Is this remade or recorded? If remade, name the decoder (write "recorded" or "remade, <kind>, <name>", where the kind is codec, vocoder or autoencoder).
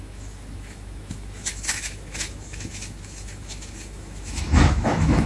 remade, autoencoder, DAC-VAE